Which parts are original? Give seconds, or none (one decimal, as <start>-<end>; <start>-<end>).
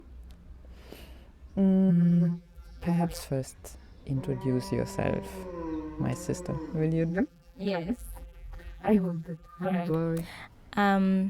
0.0-1.9; 3.2-7.1; 9.9-11.3